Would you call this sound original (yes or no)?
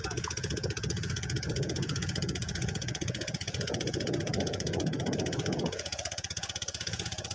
no